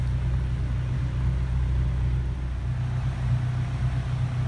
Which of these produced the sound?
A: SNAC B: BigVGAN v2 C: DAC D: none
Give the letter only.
D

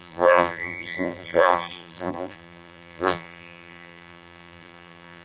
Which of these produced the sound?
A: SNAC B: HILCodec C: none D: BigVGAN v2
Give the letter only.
D